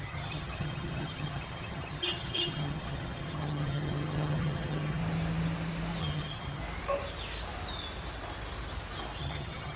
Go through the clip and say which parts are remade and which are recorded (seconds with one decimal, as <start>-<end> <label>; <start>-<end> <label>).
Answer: 0.0-5.0 remade; 5.0-6.0 recorded; 6.0-6.6 remade; 6.6-9.2 recorded; 9.2-9.8 remade